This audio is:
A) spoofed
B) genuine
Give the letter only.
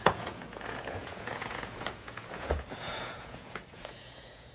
A